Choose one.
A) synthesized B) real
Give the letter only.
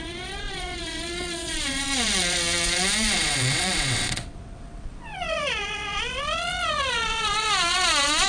A